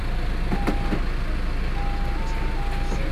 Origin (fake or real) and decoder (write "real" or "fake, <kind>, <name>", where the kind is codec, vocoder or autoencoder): real